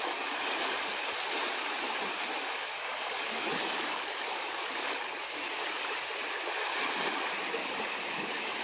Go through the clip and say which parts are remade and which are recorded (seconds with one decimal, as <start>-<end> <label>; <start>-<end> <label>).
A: 0.0-2.6 recorded; 2.6-5.8 remade; 5.8-7.6 recorded; 7.6-8.6 remade